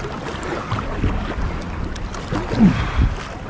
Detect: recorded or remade recorded